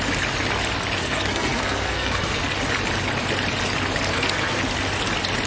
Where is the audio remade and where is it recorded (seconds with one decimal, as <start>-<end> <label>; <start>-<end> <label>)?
0.0-1.0 recorded; 1.0-2.4 remade; 2.4-4.1 recorded; 4.1-4.6 remade; 4.6-5.5 recorded